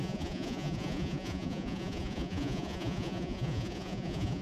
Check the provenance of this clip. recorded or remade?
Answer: remade